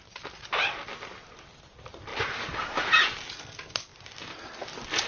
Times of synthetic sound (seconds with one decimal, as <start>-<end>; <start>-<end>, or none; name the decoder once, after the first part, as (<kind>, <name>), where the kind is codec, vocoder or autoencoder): none